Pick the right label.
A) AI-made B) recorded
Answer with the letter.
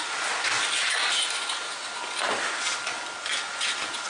B